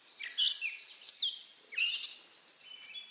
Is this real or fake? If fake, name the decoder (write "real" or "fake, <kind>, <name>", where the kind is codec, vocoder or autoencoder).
real